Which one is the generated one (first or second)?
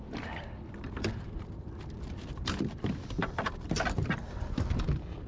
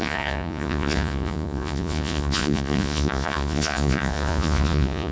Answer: second